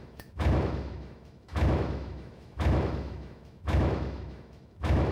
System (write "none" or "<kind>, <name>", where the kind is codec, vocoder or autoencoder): autoencoder, DAC-VAE